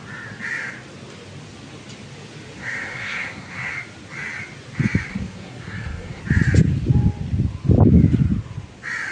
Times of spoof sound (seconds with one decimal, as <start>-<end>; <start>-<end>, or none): 2.6-3.7; 5.1-6.2